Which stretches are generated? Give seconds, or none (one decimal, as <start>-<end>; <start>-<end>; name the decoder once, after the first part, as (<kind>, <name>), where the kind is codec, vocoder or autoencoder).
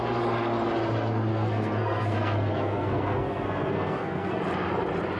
1.3-4.4 (codec, SNAC)